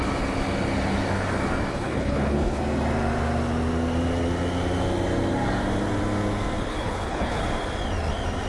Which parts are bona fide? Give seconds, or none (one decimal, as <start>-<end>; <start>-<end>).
0.0-1.7; 2.6-6.7; 7.4-8.5